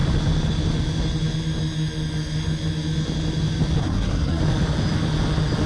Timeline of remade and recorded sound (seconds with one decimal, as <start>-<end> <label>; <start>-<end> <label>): 0.0-3.8 recorded; 3.8-4.4 remade; 4.4-5.7 recorded